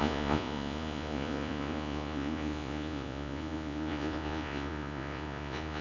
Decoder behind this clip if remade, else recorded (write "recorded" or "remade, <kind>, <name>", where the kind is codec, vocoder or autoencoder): remade, vocoder, Vocos